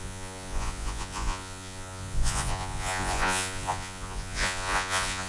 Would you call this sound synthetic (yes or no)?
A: yes